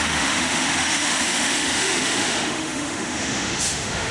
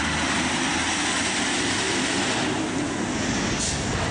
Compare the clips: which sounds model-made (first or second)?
first